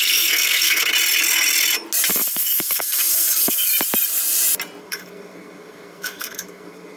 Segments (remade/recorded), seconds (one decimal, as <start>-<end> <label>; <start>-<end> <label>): 0.0-0.9 remade; 0.9-2.1 recorded; 2.1-3.7 remade; 3.7-4.8 recorded; 4.8-7.0 remade